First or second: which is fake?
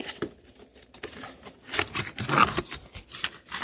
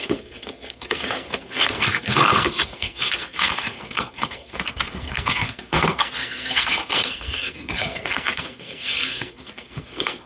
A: second